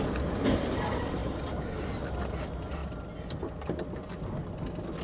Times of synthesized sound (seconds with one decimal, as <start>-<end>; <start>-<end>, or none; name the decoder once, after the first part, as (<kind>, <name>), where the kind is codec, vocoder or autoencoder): none

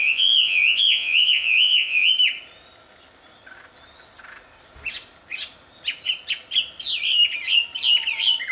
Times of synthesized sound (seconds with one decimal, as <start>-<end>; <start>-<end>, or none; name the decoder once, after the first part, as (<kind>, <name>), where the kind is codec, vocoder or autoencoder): 0.0-2.1 (vocoder, Vocos)